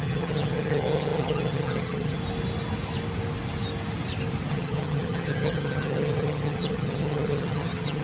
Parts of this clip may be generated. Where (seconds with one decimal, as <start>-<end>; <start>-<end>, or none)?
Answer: 0.0-2.2; 4.5-8.0